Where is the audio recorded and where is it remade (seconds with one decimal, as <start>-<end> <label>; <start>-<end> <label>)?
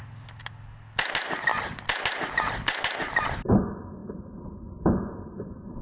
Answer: 0.0-5.8 recorded